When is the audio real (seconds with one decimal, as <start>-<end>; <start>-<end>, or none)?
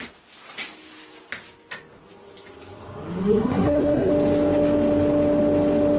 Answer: 0.0-3.2; 4.1-6.0